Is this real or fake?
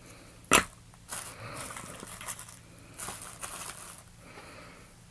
real